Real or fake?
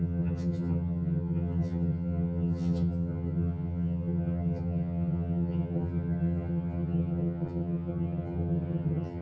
fake